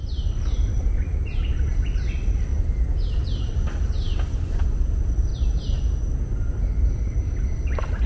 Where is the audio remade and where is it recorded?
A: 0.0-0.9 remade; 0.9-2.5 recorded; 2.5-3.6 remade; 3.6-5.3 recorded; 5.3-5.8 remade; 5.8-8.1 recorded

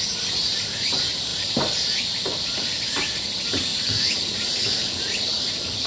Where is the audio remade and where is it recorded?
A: 0.0-1.3 recorded; 1.3-2.4 remade; 2.4-3.7 recorded; 3.7-5.9 remade

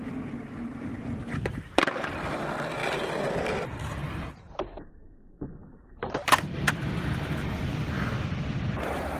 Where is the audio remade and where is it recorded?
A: 0.0-2.8 recorded; 2.8-4.9 remade; 4.9-5.6 recorded; 5.6-6.7 remade; 6.7-9.2 recorded